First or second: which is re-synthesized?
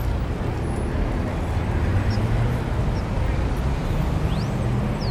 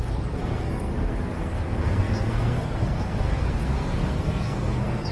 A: second